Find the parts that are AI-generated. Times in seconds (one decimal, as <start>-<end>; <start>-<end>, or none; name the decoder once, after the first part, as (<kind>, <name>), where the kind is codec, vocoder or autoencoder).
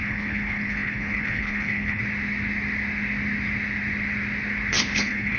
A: 0.0-2.0 (codec, HILCodec); 4.7-5.4